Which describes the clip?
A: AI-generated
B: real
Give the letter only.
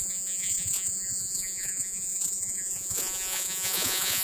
A